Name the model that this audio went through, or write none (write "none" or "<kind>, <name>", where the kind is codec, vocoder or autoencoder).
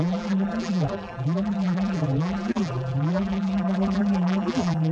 vocoder, BigVGAN v2